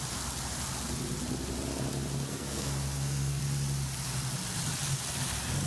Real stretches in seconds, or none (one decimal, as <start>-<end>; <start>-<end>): 0.0-2.3; 3.4-5.7